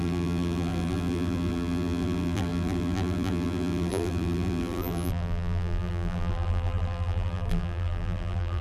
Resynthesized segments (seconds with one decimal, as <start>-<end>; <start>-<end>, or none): 0.0-8.6